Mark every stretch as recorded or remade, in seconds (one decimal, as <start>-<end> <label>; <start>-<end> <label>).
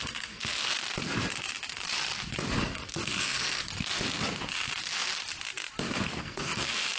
0.0-0.8 remade; 0.8-2.6 recorded; 2.6-3.7 remade; 3.7-6.2 recorded; 6.2-7.0 remade